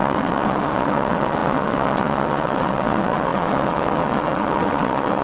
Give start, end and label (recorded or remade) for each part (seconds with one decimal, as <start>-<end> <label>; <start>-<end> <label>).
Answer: 0.0-5.2 remade